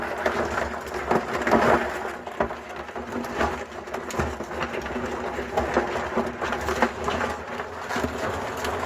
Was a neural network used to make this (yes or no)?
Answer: no